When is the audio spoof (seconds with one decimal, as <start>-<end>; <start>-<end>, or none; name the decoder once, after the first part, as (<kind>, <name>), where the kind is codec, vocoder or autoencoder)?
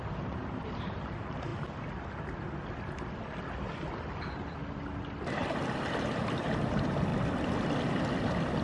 0.0-1.5 (vocoder, BigVGAN v2); 5.9-7.1